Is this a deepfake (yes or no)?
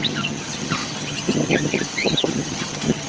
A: yes